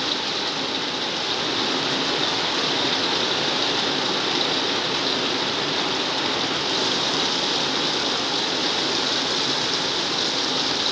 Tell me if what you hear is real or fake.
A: real